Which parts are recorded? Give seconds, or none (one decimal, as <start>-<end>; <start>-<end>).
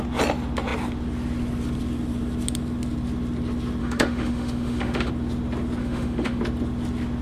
0.0-3.8; 5.1-5.8; 6.4-7.2